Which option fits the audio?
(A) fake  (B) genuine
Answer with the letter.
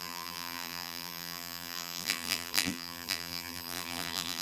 A